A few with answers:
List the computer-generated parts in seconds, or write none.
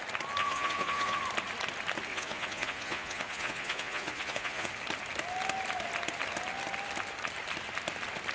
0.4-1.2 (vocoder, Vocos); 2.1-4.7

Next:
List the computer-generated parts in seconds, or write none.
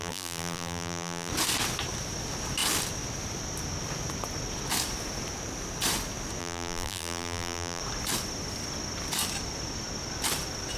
0.0-1.3 (vocoder, BigVGAN v2); 6.4-7.8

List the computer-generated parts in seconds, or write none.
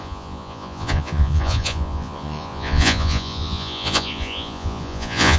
0.0-5.4 (vocoder, Vocos)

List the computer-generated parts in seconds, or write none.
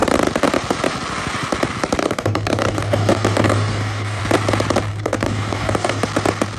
2.0-4.2 (codec, DAC); 4.9-6.0